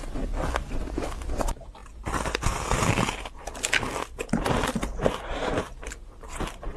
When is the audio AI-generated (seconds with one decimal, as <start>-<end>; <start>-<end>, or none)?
none